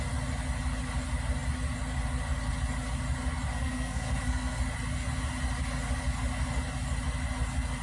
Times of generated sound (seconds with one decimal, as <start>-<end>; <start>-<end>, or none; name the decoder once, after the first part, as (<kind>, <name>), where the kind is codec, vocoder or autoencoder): 3.5-4.6 (codec, SNAC)